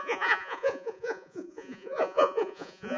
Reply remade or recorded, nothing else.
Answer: remade